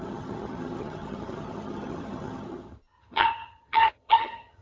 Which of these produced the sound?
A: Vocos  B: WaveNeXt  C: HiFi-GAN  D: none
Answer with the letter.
C